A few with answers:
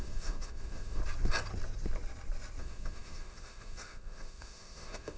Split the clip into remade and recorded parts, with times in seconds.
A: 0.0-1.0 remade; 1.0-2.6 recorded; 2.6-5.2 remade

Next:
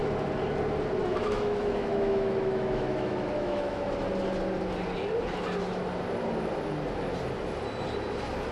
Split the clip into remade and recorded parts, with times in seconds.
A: 0.0-1.0 recorded; 1.0-3.9 remade; 3.9-8.5 recorded

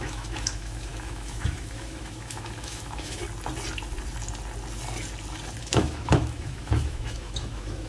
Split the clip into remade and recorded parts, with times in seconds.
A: 0.0-3.2 remade; 3.2-5.6 recorded; 5.6-7.9 remade

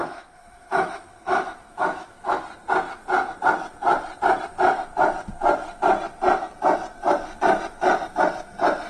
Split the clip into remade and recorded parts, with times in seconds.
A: 0.0-2.4 remade; 2.4-8.9 recorded

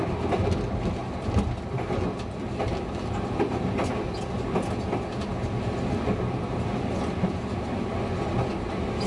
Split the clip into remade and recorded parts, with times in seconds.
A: 0.0-9.1 recorded

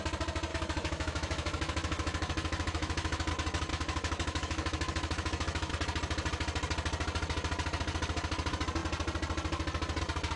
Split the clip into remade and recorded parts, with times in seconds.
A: 0.0-0.5 recorded; 0.5-3.3 remade; 3.3-3.7 recorded; 3.7-5.7 remade; 5.7-10.4 recorded

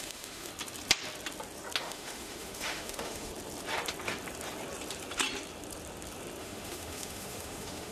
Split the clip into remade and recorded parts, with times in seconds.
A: 0.0-0.5 remade; 0.5-1.8 recorded; 1.8-3.3 remade; 3.3-6.4 recorded; 6.4-7.9 remade

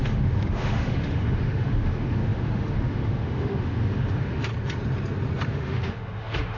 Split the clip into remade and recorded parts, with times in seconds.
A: 0.0-4.5 remade; 4.5-5.5 recorded; 5.5-6.6 remade